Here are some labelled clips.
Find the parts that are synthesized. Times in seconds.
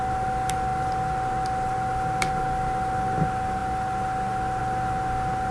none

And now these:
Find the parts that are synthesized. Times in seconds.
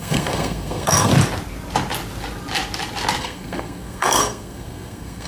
0.0-1.1 (codec, SNAC); 3.2-5.3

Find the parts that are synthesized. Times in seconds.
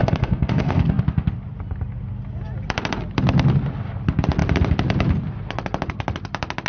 0.0-1.0 (codec, SNAC)